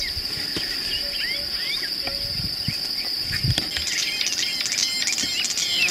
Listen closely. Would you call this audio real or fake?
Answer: real